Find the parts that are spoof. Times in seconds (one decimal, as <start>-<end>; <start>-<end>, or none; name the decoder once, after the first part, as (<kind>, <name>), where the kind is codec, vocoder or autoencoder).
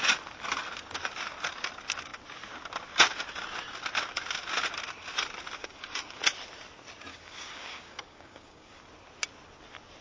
5.6-6.2 (codec, DAC); 7.1-8.8